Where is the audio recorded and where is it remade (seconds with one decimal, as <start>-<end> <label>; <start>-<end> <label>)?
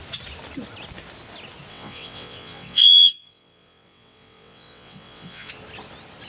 0.0-1.7 recorded; 1.7-5.5 remade; 5.5-6.3 recorded